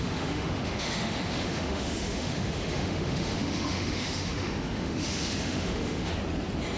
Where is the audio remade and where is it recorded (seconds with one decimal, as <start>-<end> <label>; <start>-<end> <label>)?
0.0-6.1 remade; 6.1-6.8 recorded